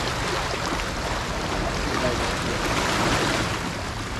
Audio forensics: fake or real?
real